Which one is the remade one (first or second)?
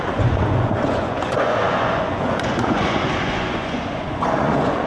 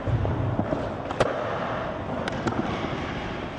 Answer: first